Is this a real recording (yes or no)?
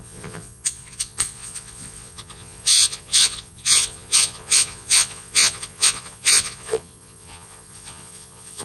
no